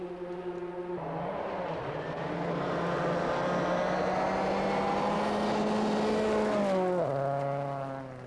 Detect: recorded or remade recorded